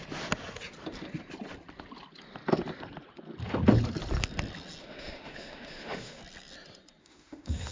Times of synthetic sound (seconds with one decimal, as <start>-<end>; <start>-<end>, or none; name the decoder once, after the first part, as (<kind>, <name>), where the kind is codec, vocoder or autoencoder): 4.8-6.2 (autoencoder, DAC-VAE); 7.0-7.7

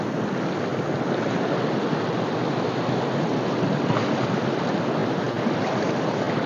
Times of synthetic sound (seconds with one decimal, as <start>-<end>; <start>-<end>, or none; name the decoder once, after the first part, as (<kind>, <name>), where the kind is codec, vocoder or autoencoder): none

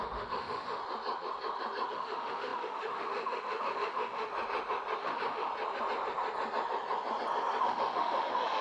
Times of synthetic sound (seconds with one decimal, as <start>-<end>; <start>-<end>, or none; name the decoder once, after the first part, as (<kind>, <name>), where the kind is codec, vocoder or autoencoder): 0.0-0.8 (autoencoder, DAC-VAE); 1.9-4.3; 5.0-5.5; 7.6-8.6

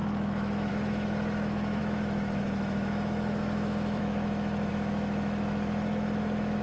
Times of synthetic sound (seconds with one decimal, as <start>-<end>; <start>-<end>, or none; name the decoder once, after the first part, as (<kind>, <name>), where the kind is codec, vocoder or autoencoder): 0.0-6.6 (autoencoder, DAC-VAE)

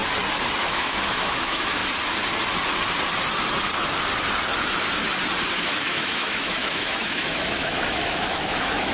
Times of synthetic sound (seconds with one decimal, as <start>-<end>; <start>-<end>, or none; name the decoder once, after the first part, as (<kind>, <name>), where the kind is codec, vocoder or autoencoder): 0.6-1.8 (autoencoder, DAC-VAE); 5.6-8.9